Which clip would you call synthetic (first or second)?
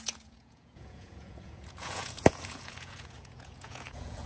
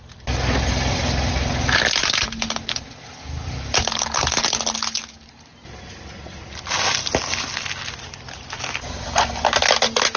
first